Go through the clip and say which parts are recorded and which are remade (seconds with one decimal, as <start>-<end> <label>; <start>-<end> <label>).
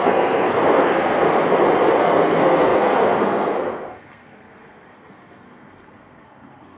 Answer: 0.0-1.3 remade; 1.3-2.0 recorded; 2.0-6.8 remade